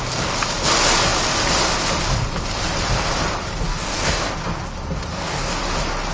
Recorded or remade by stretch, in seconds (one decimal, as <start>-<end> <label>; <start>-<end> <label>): 0.0-3.7 recorded; 3.7-4.3 remade; 4.3-5.1 recorded; 5.1-5.6 remade; 5.6-6.1 recorded